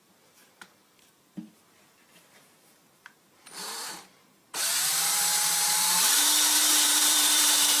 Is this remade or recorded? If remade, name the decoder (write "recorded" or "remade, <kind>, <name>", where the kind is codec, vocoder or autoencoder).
remade, vocoder, BigVGAN v2